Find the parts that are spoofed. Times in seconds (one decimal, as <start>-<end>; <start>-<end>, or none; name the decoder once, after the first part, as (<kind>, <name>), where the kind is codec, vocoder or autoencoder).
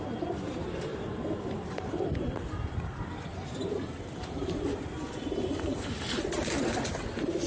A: 0.9-2.3 (vocoder, BigVGAN v2); 3.3-7.0